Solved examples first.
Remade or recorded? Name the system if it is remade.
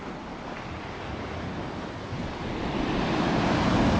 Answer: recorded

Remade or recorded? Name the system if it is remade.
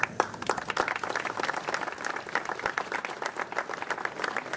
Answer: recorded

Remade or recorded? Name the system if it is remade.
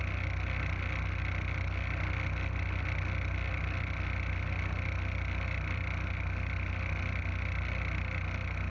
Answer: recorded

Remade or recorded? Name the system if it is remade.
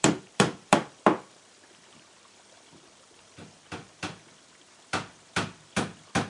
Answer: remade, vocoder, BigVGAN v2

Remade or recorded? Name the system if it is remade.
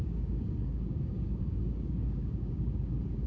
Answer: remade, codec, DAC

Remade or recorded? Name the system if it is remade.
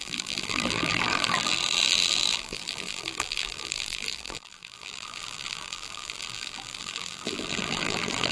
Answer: remade, vocoder, BigVGAN v2